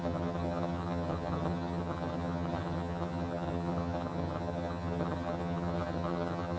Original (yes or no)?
no